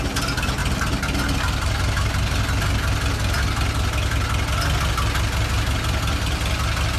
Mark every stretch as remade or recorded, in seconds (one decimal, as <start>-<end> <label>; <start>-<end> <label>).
0.0-7.0 recorded